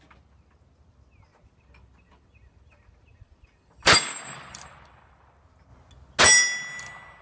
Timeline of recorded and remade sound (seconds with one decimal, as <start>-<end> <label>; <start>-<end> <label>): 0.0-1.3 recorded; 1.3-4.9 remade; 4.9-7.2 recorded